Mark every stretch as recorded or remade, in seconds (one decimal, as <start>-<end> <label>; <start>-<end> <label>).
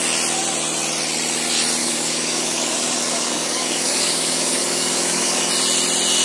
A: 0.0-1.8 recorded; 1.8-5.5 remade; 5.5-6.2 recorded